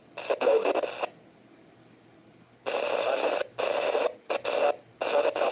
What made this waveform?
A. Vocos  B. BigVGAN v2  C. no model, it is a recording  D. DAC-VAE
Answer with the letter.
C